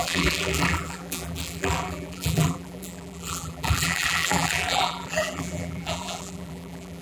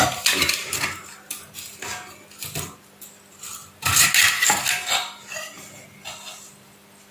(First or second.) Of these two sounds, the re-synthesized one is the first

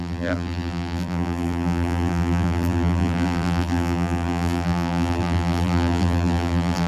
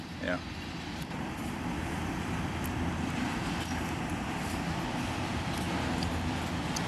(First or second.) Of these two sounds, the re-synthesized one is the first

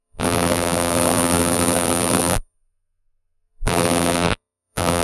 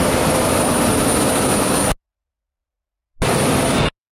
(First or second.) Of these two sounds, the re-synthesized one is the first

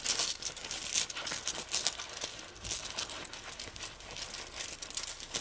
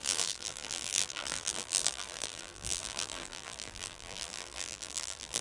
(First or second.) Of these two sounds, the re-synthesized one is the second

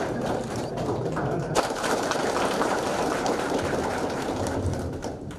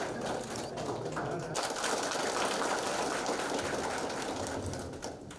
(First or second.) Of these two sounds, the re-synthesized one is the first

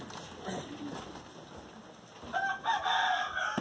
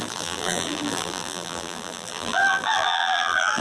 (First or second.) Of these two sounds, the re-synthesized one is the second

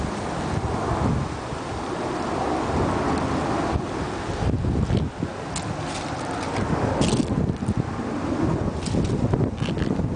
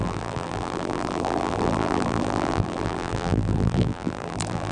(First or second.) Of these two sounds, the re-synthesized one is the second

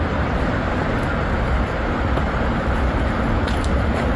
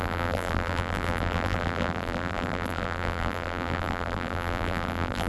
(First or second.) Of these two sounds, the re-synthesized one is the second